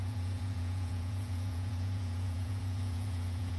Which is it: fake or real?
fake